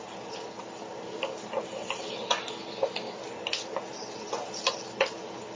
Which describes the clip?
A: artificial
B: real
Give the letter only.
B